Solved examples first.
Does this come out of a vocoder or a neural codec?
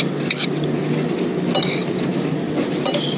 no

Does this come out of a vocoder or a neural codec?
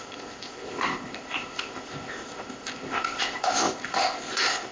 yes